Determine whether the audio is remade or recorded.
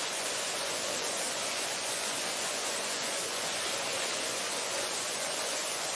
remade